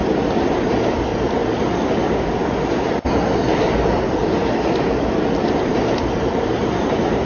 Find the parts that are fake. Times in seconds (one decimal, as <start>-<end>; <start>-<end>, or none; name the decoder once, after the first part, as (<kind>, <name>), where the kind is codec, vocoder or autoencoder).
0.0-1.1 (vocoder, BigVGAN v2); 5.5-7.3